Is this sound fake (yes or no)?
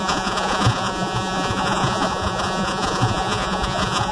yes